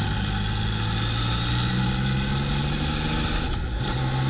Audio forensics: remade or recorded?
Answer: recorded